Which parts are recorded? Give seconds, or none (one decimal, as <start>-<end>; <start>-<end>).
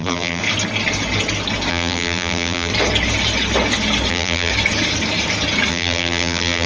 0.4-1.7; 2.7-4.1; 4.5-5.7